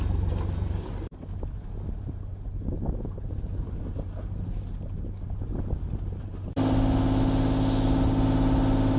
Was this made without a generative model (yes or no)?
yes